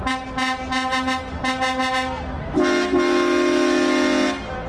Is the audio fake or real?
real